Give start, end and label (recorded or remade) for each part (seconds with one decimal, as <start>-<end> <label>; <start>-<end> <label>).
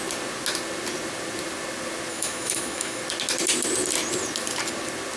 0.0-2.1 recorded; 2.1-3.0 remade; 3.0-5.2 recorded